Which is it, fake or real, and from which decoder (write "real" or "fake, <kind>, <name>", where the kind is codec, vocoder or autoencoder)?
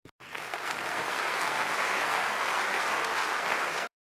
fake, codec, SNAC